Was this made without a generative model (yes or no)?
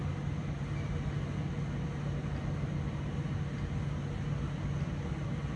yes